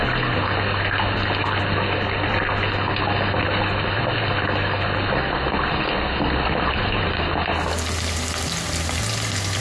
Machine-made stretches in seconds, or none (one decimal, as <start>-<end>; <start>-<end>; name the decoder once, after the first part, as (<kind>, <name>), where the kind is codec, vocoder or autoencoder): none